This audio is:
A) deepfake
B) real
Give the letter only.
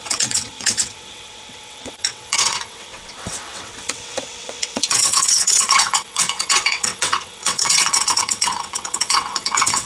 A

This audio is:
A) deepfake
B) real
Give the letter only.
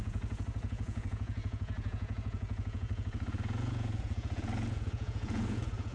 A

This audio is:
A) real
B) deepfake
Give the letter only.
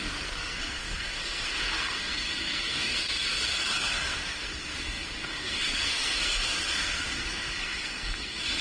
B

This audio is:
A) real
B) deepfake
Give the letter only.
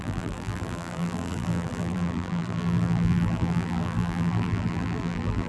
B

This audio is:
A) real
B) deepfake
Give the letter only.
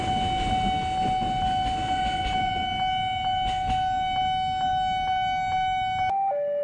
A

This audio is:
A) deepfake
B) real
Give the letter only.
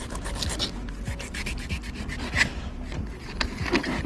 B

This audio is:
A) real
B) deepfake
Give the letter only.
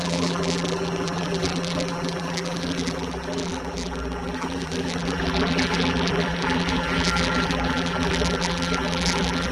B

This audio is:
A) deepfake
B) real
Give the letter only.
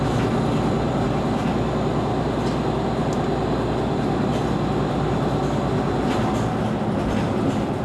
B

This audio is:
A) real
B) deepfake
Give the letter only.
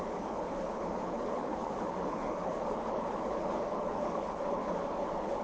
B